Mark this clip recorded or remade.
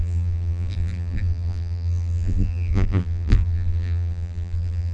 remade